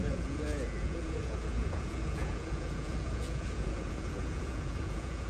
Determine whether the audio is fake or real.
fake